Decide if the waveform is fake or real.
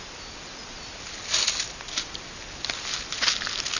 real